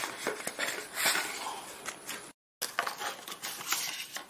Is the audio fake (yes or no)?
no